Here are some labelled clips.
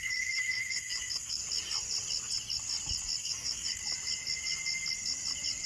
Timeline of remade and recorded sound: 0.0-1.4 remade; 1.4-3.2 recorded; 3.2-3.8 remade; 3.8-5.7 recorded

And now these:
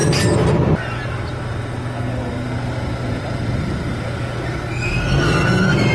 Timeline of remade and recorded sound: 0.0-5.9 recorded

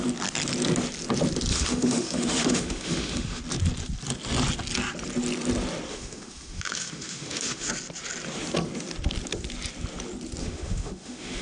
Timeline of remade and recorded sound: 0.0-1.5 recorded; 1.5-3.4 remade; 3.4-5.9 recorded; 5.9-7.7 remade; 7.7-10.4 recorded; 10.4-11.4 remade

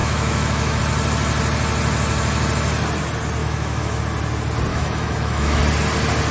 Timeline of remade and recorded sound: 0.0-0.8 remade; 0.8-3.4 recorded; 3.4-4.0 remade; 4.0-4.7 recorded; 4.7-5.6 remade; 5.6-6.3 recorded

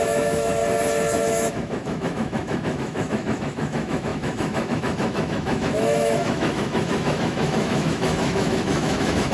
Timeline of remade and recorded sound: 0.0-0.6 remade; 0.6-1.3 recorded; 1.3-9.3 remade